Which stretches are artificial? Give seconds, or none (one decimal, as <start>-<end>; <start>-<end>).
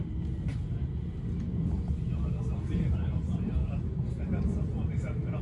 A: 0.5-3.1